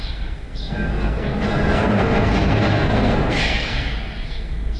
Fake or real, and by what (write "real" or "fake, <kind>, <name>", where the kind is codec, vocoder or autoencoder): fake, codec, SNAC